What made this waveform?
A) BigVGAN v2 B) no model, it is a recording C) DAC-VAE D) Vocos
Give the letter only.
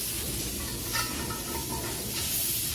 B